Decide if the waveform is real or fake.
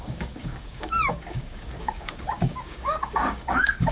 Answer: fake